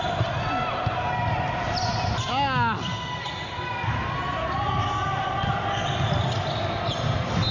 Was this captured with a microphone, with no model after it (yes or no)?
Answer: yes